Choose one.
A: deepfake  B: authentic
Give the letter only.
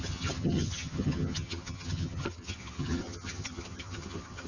A